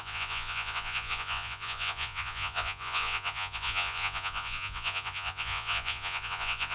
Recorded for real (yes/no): no